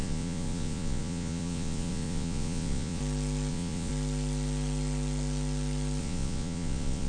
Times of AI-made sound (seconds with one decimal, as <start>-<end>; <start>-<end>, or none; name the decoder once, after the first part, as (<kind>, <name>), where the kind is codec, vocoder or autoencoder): 0.0-3.0 (vocoder, Vocos); 3.5-3.9; 6.0-7.1